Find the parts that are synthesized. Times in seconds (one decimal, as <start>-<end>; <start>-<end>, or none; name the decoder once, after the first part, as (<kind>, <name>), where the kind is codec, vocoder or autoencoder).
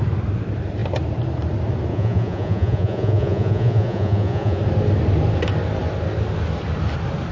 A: 1.9-4.6 (vocoder, Vocos)